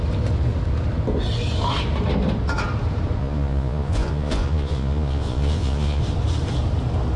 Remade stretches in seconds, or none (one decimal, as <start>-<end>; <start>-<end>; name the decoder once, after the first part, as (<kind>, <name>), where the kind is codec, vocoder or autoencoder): 3.2-6.0 (vocoder, Vocos)